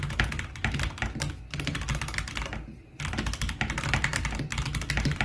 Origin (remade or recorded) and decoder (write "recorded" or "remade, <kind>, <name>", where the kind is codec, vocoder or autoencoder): recorded